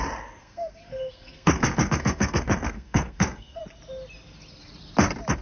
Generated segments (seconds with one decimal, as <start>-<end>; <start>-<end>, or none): 0.4-3.6